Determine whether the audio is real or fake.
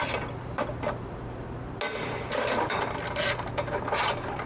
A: real